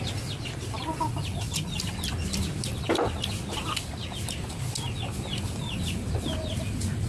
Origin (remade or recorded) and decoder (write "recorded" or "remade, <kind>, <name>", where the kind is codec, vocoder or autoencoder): recorded